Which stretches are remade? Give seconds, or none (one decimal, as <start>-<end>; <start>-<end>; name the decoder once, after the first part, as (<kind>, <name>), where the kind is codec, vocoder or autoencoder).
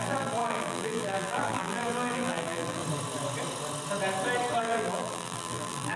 0.0-2.8 (vocoder, BigVGAN v2); 4.6-6.0